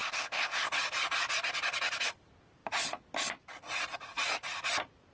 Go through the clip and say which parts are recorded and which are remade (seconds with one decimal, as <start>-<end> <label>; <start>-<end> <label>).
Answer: 0.0-0.7 remade; 0.7-5.1 recorded

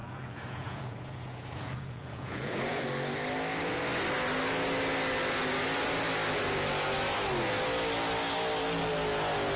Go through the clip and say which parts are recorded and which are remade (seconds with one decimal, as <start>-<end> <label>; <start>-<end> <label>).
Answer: 0.0-2.8 remade; 2.8-9.6 recorded

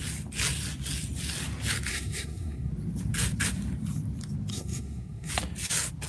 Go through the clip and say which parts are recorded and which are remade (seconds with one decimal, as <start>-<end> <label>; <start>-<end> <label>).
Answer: 0.0-1.9 recorded; 1.9-2.7 remade; 2.7-4.5 recorded; 4.5-5.3 remade; 5.3-6.1 recorded

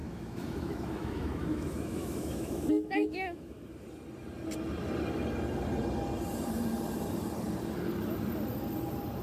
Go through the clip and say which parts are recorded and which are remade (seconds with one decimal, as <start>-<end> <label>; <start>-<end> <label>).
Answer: 0.0-3.7 remade; 3.7-9.2 recorded

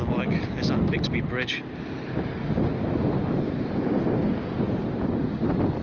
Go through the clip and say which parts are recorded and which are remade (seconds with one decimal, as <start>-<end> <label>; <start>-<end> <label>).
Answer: 0.0-5.8 recorded